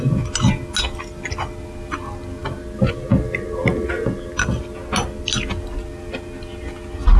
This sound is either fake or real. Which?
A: real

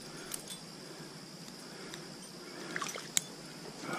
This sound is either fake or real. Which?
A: real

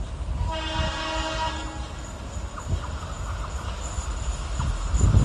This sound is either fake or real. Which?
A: real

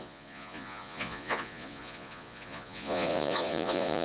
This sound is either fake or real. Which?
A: fake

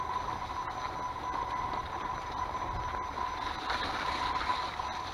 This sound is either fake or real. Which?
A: real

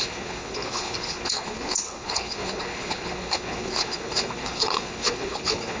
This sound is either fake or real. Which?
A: fake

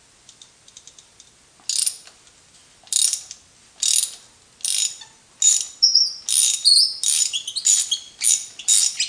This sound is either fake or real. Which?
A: real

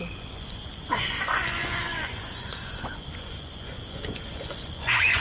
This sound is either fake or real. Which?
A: fake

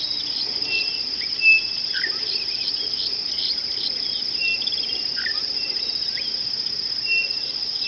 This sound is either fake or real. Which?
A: real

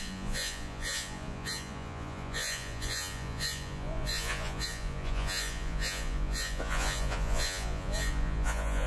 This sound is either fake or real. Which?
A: fake